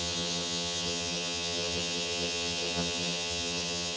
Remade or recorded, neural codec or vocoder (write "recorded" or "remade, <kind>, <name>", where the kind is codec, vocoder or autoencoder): remade, vocoder, HiFi-GAN